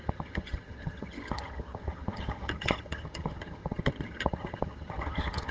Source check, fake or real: fake